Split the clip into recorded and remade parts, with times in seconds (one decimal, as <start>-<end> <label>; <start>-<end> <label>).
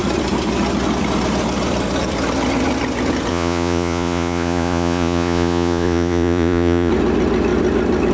0.0-3.3 recorded; 3.3-6.9 remade; 6.9-8.1 recorded